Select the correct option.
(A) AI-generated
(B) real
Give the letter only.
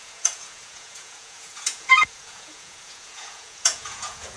A